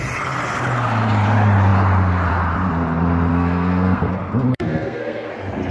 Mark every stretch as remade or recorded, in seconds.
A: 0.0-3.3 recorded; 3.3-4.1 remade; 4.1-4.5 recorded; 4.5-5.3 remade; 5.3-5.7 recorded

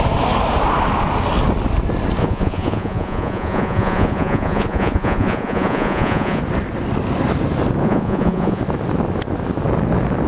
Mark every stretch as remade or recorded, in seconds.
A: 0.0-2.2 recorded; 2.2-6.4 remade; 6.4-7.8 recorded; 7.8-8.6 remade; 8.6-10.3 recorded